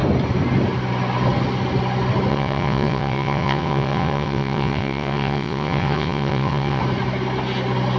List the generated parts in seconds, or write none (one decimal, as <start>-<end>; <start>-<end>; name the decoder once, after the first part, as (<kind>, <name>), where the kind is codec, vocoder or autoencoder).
2.3-6.8 (vocoder, WaveNeXt)